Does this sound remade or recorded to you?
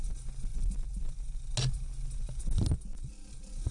recorded